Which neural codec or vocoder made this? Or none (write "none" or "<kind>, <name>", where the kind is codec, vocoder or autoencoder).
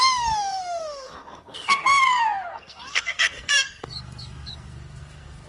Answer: codec, SNAC